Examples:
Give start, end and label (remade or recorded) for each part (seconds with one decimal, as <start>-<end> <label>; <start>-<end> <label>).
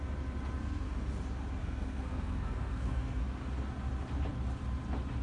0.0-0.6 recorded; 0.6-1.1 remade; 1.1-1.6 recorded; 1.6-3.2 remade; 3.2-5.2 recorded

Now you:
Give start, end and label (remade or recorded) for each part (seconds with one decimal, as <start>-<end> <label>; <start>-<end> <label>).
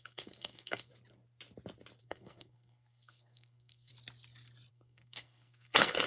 0.0-0.9 remade; 0.9-2.0 recorded; 2.0-3.9 remade; 3.9-4.7 recorded; 4.7-6.1 remade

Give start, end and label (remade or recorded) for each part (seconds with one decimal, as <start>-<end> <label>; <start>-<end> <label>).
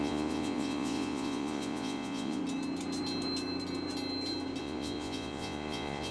0.0-2.4 remade; 2.4-4.6 recorded; 4.6-6.1 remade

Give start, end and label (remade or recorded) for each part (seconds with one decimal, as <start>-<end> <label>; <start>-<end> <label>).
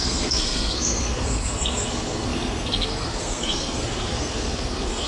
0.0-5.1 remade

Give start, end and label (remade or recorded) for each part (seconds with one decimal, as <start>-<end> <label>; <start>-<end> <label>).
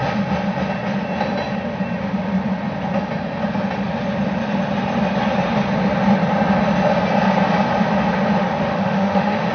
0.0-8.7 recorded; 8.7-9.5 remade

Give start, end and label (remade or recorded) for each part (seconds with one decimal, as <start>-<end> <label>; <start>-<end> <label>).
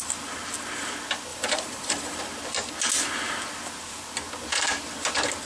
0.0-1.3 recorded; 1.3-2.2 remade; 2.2-5.5 recorded